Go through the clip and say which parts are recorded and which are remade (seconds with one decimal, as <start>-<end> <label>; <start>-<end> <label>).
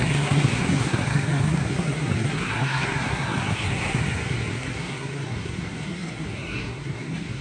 0.0-7.4 remade